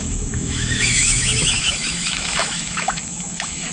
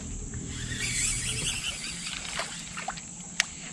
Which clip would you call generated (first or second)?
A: first